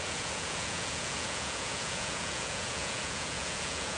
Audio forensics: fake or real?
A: fake